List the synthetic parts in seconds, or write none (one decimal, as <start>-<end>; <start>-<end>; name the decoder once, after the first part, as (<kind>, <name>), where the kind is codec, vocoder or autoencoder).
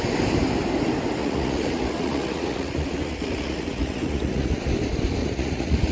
1.2-4.7 (vocoder, Vocos); 5.2-5.9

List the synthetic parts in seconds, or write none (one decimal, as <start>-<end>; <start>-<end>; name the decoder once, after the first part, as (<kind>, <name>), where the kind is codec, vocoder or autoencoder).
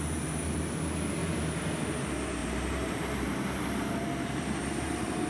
1.2-1.9 (vocoder, BigVGAN v2); 2.4-5.3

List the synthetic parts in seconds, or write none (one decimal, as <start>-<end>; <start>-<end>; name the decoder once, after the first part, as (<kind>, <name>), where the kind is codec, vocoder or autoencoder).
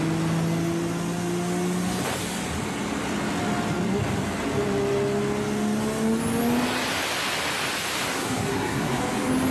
8.1-9.0 (codec, SNAC)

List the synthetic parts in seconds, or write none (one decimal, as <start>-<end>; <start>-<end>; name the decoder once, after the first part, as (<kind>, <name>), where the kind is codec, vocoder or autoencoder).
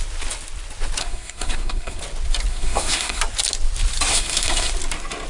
1.0-2.0 (codec, SNAC); 2.5-3.2; 4.1-4.7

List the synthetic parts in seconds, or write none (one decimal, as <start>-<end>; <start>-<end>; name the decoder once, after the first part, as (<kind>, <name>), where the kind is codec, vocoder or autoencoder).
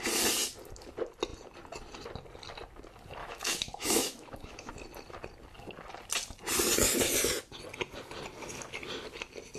3.2-4.7 (autoencoder, DAC-VAE)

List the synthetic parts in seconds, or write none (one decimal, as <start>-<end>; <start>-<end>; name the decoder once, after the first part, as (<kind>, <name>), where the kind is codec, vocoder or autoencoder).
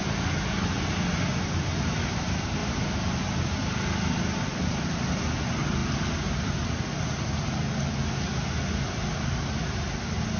none